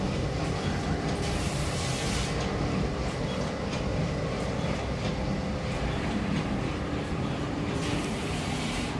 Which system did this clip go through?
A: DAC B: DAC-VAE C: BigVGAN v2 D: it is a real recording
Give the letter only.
D